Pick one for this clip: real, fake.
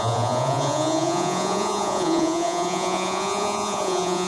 fake